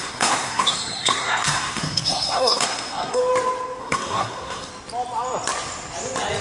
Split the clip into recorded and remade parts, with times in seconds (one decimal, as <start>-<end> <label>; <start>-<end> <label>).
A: 0.0-3.2 remade; 3.2-3.8 recorded; 3.8-4.7 remade; 4.7-6.4 recorded